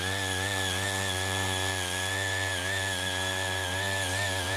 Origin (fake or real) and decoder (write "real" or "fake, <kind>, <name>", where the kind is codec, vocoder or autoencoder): fake, vocoder, Vocos